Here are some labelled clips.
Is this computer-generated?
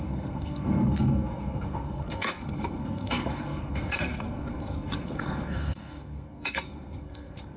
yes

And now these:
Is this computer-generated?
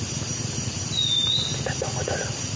no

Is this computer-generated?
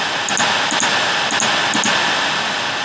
no